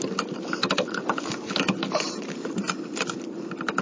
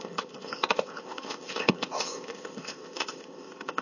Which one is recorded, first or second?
first